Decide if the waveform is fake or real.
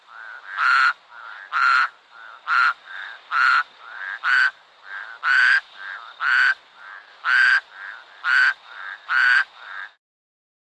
real